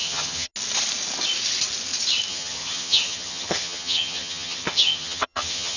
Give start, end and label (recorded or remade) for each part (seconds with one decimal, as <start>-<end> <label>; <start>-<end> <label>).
0.0-0.5 remade; 0.5-2.3 recorded; 2.3-5.8 remade